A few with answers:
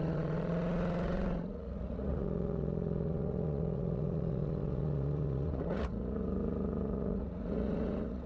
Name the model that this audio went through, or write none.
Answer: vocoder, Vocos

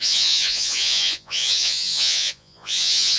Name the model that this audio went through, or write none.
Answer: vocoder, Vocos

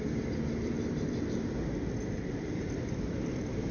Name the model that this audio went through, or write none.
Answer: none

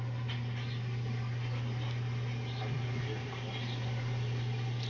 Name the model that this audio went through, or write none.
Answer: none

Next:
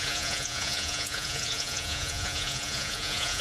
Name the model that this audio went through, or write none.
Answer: vocoder, Vocos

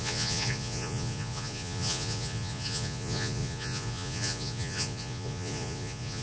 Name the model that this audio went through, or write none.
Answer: vocoder, Vocos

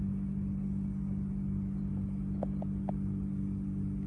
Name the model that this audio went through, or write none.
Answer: none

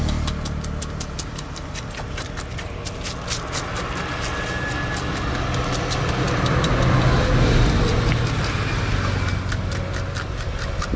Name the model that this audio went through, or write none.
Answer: none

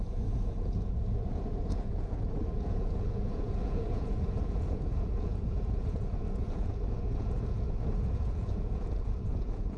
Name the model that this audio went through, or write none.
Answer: vocoder, Vocos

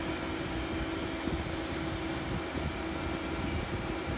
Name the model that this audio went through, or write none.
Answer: none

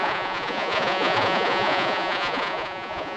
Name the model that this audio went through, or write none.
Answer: vocoder, Vocos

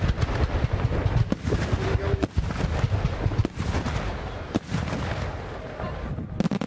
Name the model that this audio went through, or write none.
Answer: none